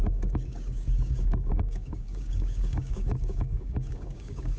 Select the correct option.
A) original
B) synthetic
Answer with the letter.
B